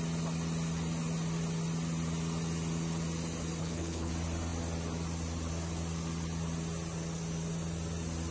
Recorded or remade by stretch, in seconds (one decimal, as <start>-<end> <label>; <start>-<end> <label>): 0.0-3.6 recorded; 3.6-4.1 remade; 4.1-8.3 recorded